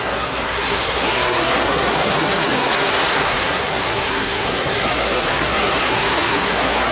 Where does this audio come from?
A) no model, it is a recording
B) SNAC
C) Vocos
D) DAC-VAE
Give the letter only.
B